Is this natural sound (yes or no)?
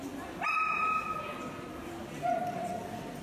yes